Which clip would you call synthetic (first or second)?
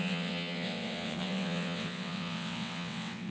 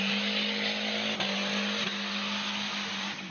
first